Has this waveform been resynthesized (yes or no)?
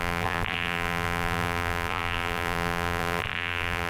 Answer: yes